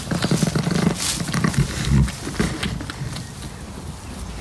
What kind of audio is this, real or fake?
real